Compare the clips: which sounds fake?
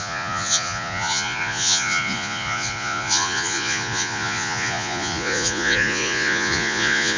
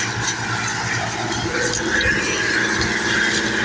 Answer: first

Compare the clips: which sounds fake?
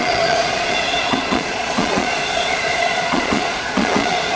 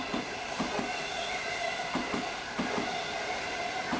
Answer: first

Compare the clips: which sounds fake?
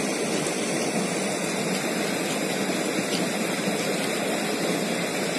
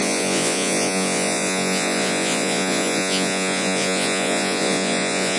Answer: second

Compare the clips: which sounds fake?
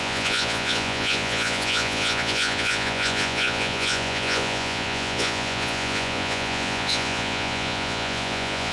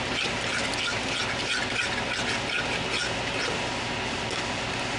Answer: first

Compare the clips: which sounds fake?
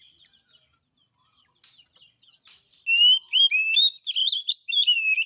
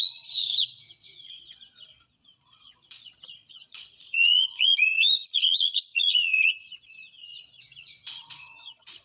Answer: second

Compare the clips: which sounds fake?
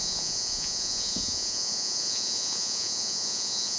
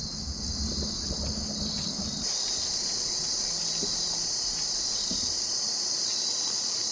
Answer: first